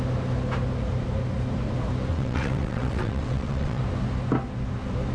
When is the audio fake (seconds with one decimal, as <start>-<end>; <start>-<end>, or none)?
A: 2.1-3.8